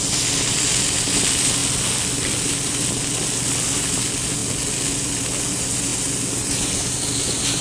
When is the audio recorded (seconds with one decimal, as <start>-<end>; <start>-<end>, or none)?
0.0-7.6

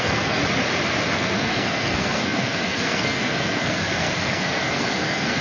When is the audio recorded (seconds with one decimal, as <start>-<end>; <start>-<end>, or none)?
0.4-1.1